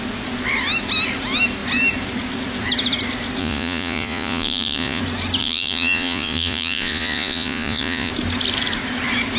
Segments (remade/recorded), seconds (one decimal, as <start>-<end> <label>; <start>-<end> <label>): 0.0-3.4 recorded; 3.4-5.0 remade; 5.0-5.4 recorded; 5.4-8.1 remade; 8.1-9.4 recorded